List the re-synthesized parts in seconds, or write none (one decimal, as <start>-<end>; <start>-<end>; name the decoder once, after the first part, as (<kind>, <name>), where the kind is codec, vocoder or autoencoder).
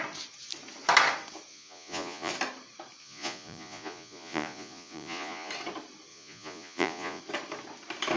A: 1.5-2.3 (vocoder, Vocos); 3.0-5.5; 6.1-7.2